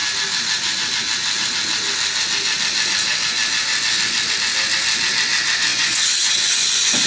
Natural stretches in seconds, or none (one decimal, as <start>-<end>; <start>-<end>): 0.0-5.7